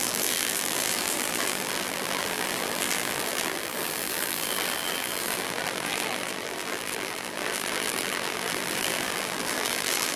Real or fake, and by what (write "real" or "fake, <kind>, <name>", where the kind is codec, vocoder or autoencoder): fake, vocoder, BigVGAN v2